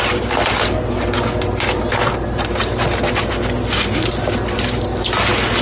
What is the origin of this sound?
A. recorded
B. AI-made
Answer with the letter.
A